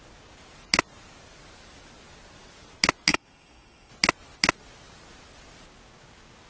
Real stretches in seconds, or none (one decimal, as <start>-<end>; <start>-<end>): 0.0-3.1; 3.9-6.5